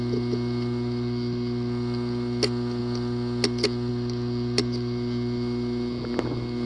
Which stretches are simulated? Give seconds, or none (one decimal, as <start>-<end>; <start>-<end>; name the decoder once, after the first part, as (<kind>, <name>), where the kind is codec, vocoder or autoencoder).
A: none